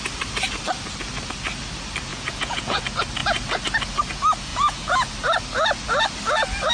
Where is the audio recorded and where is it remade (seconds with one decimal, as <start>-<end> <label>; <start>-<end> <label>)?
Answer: 0.0-2.1 recorded; 2.1-2.8 remade; 2.8-4.5 recorded; 4.5-5.1 remade; 5.1-6.7 recorded